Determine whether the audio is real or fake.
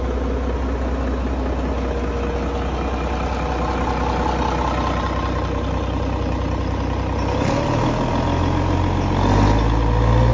real